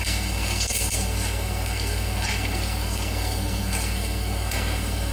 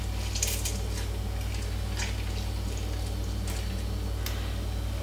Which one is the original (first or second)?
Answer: second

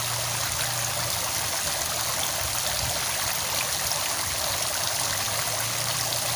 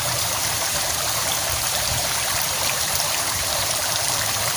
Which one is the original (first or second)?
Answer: first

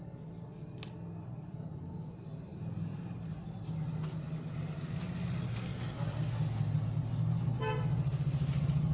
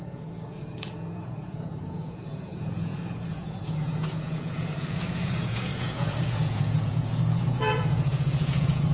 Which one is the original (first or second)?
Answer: first